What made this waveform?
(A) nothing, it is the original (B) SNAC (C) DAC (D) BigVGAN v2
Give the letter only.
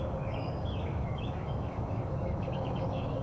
C